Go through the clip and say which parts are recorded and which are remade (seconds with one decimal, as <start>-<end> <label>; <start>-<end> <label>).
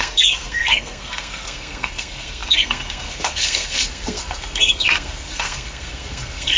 0.0-6.6 remade